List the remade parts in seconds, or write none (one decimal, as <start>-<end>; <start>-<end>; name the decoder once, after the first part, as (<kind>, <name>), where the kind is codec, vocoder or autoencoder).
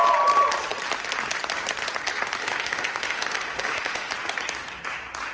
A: 2.4-4.1 (autoencoder, DAC-VAE)